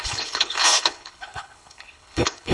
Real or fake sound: fake